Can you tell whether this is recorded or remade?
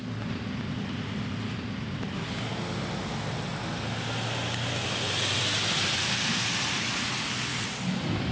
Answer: recorded